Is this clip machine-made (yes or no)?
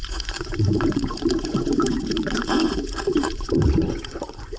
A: yes